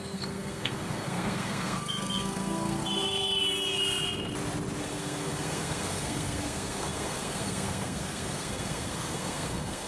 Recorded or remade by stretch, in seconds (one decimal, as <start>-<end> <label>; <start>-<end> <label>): 0.0-2.8 remade; 2.8-4.8 recorded; 4.8-9.9 remade